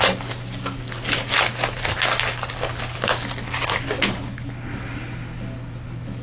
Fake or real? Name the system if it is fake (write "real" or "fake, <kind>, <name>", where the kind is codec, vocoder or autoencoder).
real